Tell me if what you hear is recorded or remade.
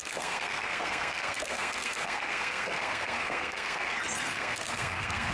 remade